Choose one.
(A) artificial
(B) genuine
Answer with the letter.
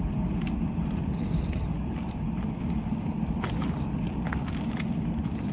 B